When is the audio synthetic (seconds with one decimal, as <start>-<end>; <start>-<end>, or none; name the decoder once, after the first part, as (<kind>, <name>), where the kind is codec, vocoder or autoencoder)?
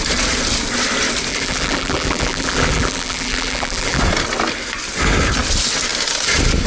1.3-4.0 (vocoder, BigVGAN v2)